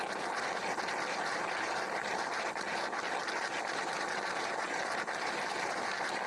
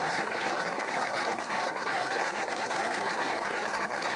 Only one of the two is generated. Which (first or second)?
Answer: second